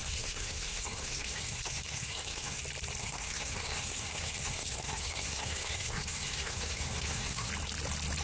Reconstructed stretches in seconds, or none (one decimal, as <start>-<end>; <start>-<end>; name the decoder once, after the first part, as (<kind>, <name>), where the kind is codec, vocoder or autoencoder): 0.0-2.6 (codec, SNAC); 3.0-7.5